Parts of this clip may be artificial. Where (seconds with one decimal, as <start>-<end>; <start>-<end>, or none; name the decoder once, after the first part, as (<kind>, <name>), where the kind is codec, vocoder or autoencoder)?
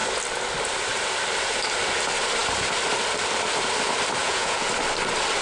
4.2-4.7 (vocoder, Vocos)